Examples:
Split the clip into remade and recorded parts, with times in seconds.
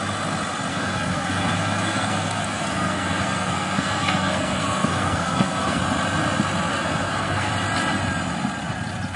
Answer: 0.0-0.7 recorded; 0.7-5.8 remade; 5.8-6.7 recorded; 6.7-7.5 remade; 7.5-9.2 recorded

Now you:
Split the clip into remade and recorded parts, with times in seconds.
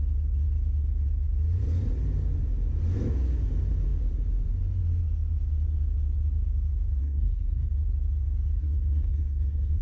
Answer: 0.0-7.0 recorded; 7.0-7.7 remade; 7.7-8.6 recorded; 8.6-9.8 remade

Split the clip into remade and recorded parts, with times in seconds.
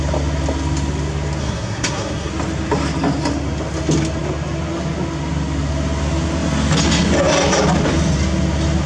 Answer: 0.0-1.4 recorded; 1.4-2.3 remade; 2.3-8.9 recorded